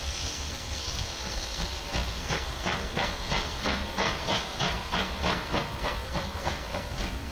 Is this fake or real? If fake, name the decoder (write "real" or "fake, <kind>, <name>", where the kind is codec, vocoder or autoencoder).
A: fake, codec, SNAC